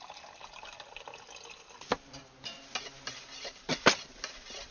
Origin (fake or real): real